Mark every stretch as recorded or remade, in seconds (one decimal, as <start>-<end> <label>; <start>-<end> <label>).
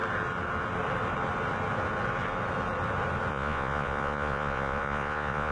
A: 0.0-3.3 recorded; 3.3-5.5 remade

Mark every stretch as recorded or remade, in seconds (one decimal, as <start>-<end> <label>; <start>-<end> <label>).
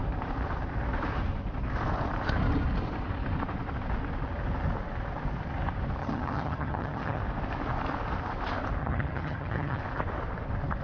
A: 0.0-6.0 recorded; 6.0-7.2 remade; 7.2-8.8 recorded; 8.8-9.8 remade; 9.8-10.8 recorded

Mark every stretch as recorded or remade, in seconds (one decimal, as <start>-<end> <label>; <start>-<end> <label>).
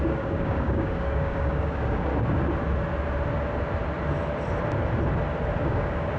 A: 0.0-2.1 remade; 2.1-5.6 recorded; 5.6-6.2 remade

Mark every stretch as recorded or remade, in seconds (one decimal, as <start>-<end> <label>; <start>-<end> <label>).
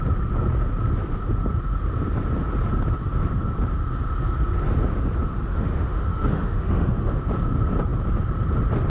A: 0.0-5.5 recorded; 5.5-7.2 remade; 7.2-8.9 recorded